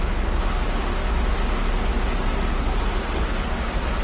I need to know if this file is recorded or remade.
recorded